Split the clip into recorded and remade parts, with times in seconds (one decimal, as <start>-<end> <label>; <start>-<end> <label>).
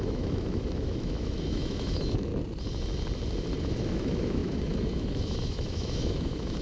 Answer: 0.0-2.3 remade; 2.3-3.6 recorded; 3.6-6.6 remade